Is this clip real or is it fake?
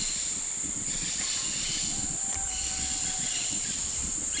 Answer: fake